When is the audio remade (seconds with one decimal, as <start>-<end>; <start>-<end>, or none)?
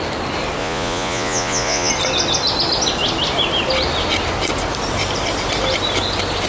0.6-1.9